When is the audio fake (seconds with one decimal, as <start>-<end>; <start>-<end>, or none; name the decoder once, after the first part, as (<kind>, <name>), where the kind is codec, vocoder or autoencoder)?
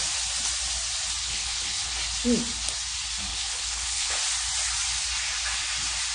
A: 1.2-1.9 (codec, HILCodec); 3.3-4.2